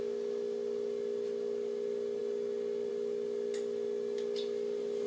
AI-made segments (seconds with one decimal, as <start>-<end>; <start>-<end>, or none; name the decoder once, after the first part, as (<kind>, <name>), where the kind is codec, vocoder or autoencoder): none